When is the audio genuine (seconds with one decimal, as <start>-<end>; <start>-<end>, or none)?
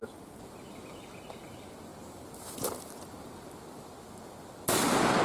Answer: 0.0-5.2